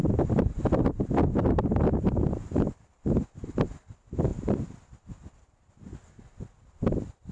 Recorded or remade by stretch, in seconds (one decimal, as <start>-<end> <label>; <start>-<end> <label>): 0.0-2.8 remade; 2.8-7.3 recorded